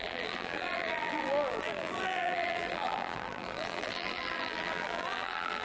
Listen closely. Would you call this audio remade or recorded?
remade